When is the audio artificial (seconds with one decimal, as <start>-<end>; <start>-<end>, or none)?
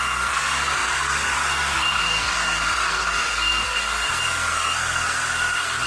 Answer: 0.0-5.9